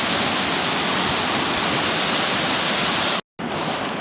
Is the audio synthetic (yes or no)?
no